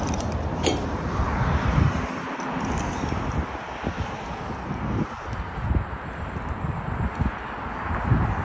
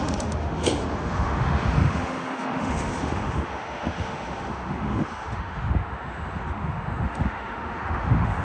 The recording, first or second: first